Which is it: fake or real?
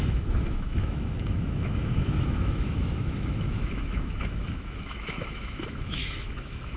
fake